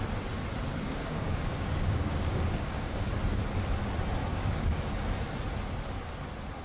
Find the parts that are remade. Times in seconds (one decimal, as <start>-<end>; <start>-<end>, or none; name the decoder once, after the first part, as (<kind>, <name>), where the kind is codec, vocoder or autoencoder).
0.7-3.1 (codec, DAC); 4.3-4.8